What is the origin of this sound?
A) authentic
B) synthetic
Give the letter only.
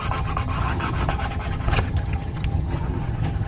B